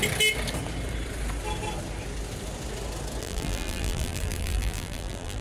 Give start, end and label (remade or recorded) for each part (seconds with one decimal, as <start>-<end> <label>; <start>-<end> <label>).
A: 0.0-3.2 recorded; 3.2-5.4 remade